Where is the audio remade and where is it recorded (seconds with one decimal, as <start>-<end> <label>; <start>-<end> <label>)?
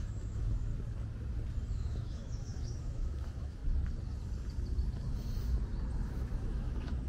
0.0-0.7 remade; 0.7-1.7 recorded; 1.7-3.6 remade; 3.6-6.1 recorded; 6.1-7.1 remade